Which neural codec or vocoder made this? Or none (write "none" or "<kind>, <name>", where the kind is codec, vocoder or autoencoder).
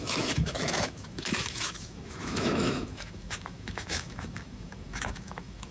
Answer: autoencoder, DAC-VAE